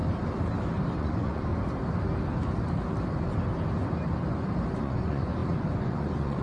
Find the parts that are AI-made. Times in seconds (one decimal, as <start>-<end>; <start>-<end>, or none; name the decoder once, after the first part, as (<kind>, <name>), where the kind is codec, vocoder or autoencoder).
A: 1.0-1.5 (vocoder, Vocos); 4.8-6.4